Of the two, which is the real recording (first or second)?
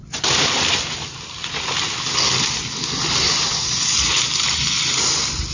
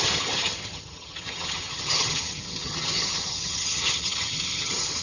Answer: first